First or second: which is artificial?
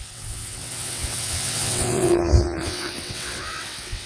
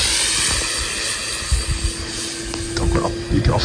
first